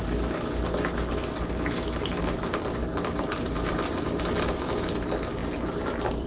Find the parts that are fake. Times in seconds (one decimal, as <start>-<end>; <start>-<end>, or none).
2.8-4.8; 5.4-6.3